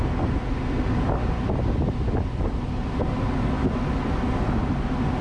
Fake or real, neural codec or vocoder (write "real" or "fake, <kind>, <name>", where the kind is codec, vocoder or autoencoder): real